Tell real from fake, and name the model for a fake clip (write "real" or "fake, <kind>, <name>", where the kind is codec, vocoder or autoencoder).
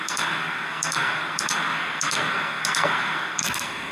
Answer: fake, codec, SNAC